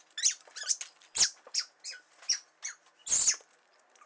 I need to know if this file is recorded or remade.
recorded